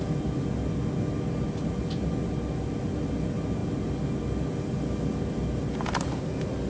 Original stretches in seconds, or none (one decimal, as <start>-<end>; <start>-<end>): 0.0-6.7